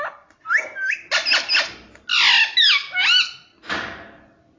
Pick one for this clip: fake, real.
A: real